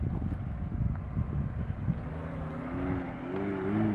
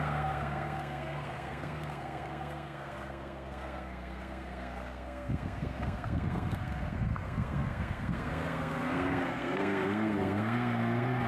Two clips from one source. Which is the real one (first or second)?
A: first